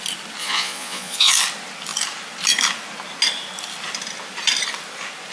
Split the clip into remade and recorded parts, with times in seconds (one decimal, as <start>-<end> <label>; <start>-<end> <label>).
0.0-0.4 recorded; 0.4-1.3 remade; 1.3-5.3 recorded